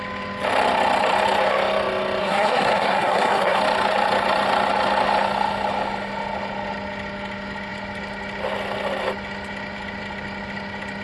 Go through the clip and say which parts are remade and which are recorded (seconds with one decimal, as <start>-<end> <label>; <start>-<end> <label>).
0.0-2.2 recorded; 2.2-3.6 remade; 3.6-11.0 recorded